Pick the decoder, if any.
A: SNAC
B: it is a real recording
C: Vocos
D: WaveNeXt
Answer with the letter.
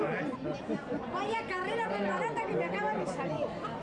B